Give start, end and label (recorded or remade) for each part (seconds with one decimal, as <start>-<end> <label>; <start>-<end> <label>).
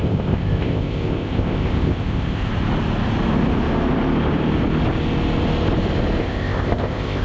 0.0-2.5 remade; 2.5-6.2 recorded; 6.2-7.2 remade